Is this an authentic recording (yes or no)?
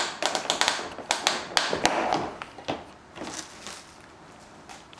yes